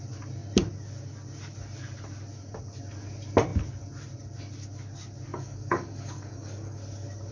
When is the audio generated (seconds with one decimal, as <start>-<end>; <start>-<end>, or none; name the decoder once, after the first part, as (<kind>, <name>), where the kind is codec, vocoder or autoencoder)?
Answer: 5.3-6.8 (codec, DAC)